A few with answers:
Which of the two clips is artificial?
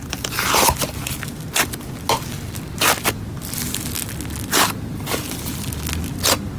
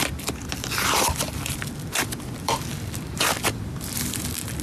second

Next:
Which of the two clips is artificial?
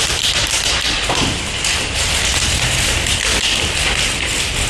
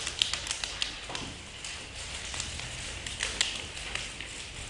first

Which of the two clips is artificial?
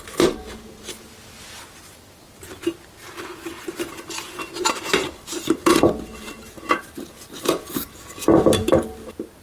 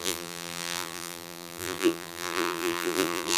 second